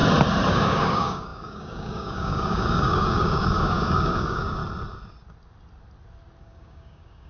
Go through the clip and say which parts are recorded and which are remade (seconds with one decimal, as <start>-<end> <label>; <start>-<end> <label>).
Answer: 0.0-0.5 recorded; 0.5-4.6 remade; 4.6-6.4 recorded; 6.4-7.3 remade